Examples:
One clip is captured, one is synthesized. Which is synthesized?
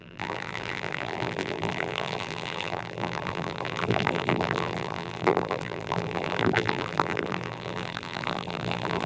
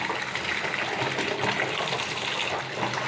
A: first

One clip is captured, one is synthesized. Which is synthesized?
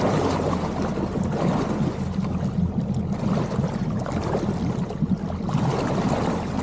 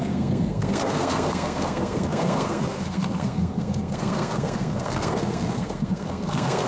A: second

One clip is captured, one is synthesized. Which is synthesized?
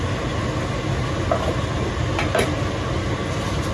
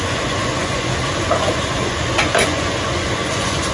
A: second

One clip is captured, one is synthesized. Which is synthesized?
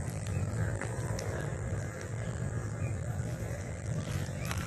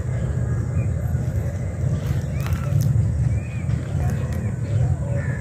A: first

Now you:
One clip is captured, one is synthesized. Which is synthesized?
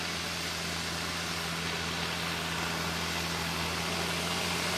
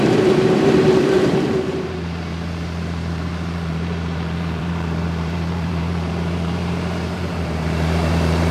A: second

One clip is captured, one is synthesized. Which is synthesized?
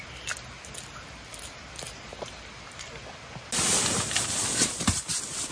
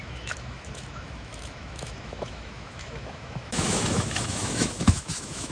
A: second